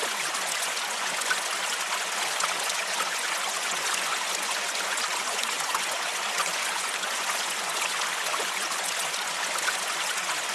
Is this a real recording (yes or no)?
no